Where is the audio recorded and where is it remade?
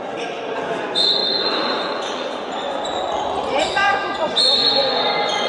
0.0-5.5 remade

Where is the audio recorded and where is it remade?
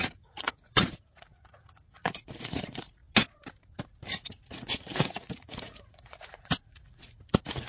0.0-3.0 remade; 3.0-4.1 recorded; 4.1-7.7 remade